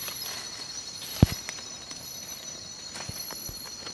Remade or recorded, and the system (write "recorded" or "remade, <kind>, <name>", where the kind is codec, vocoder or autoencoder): remade, vocoder, BigVGAN v2